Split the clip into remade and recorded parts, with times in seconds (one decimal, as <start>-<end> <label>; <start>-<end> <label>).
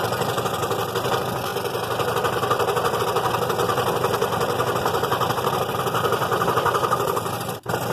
0.0-6.3 recorded; 6.3-7.4 remade; 7.4-7.9 recorded